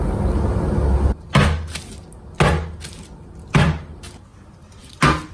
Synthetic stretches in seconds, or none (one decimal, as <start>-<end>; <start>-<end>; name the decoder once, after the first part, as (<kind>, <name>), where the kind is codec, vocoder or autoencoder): 4.3-5.3 (vocoder, BigVGAN v2)